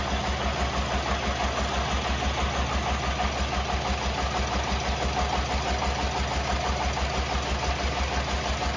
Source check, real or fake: real